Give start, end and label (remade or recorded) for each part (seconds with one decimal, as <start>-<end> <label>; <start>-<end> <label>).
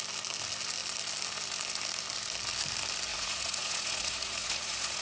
0.0-3.1 recorded; 3.1-5.0 remade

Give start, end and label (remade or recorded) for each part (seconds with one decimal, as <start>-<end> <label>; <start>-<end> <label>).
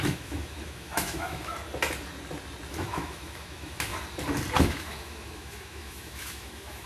0.0-1.5 remade; 1.5-2.7 recorded; 2.7-3.9 remade; 3.9-4.6 recorded; 4.6-6.9 remade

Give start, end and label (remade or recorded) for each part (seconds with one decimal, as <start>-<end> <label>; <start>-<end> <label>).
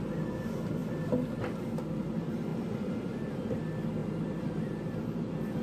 0.0-2.5 recorded; 2.5-3.6 remade; 3.6-4.0 recorded; 4.0-4.8 remade; 4.8-5.6 recorded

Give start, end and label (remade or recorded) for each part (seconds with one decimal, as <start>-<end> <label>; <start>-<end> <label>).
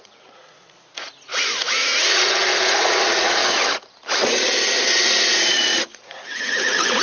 0.0-3.4 remade; 3.4-4.9 recorded; 4.9-7.0 remade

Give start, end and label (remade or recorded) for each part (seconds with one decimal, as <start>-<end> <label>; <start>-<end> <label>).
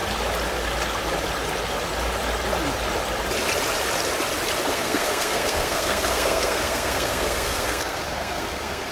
0.0-4.7 recorded; 4.7-8.9 remade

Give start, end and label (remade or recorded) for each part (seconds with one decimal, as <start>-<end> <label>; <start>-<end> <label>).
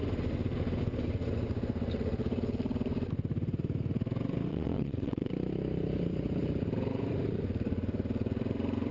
0.0-4.5 recorded; 4.5-5.3 remade; 5.3-8.9 recorded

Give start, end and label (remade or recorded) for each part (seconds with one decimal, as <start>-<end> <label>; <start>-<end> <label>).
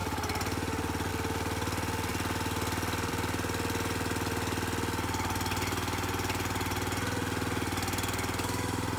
0.0-9.0 recorded